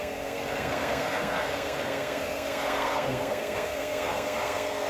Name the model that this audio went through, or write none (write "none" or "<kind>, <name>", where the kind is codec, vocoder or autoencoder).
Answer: codec, SNAC